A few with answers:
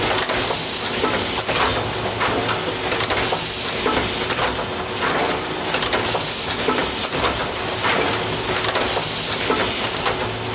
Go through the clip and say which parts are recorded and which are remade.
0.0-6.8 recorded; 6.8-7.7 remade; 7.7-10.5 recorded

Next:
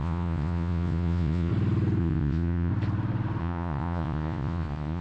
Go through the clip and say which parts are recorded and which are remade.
0.0-1.5 remade; 1.5-2.0 recorded; 2.0-2.7 remade; 2.7-3.4 recorded; 3.4-5.0 remade

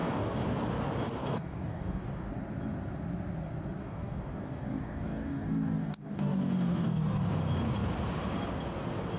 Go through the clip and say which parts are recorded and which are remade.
0.0-0.5 remade; 0.5-1.2 recorded; 1.2-2.3 remade; 2.3-3.8 recorded; 3.8-7.3 remade; 7.3-9.2 recorded

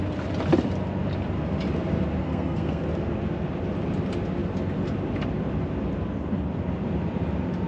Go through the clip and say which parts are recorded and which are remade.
0.0-2.2 recorded; 2.2-2.8 remade; 2.8-7.7 recorded

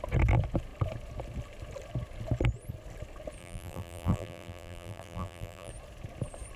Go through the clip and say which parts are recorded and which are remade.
0.0-3.4 recorded; 3.4-5.7 remade; 5.7-6.6 recorded

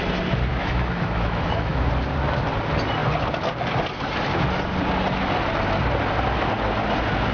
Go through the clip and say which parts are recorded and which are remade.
0.0-0.5 recorded; 0.5-1.9 remade; 1.9-7.3 recorded

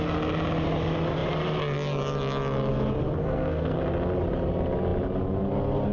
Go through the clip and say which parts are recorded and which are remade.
0.0-3.2 recorded; 3.2-3.8 remade; 3.8-5.9 recorded